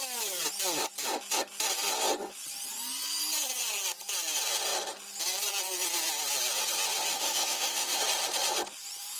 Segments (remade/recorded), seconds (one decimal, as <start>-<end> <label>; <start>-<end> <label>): 0.0-7.1 recorded; 7.1-8.0 remade; 8.0-9.2 recorded